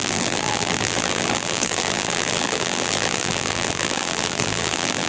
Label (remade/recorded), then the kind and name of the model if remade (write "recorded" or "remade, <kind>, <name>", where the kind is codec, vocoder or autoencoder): remade, vocoder, BigVGAN v2